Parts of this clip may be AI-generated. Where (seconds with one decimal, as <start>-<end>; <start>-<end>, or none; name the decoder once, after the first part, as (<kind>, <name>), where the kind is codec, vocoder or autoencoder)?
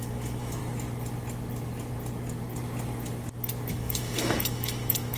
0.0-0.6 (autoencoder, DAC-VAE); 3.7-5.2